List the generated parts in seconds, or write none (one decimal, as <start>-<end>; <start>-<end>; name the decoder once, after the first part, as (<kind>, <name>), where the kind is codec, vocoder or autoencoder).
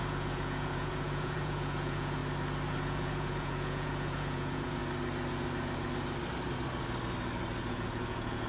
0.0-2.2 (vocoder, Vocos); 2.7-4.8; 7.7-8.5